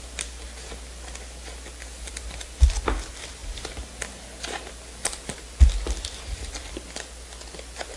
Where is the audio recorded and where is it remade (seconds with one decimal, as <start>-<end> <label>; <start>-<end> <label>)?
0.0-8.0 recorded